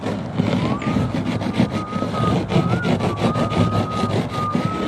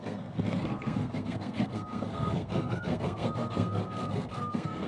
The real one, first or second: first